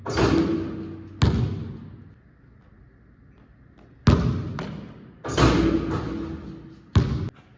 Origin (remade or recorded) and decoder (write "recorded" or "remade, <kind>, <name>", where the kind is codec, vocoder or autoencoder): recorded